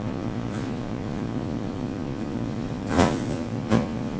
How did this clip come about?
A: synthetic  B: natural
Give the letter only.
A